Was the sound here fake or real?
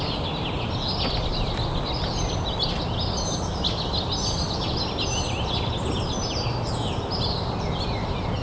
real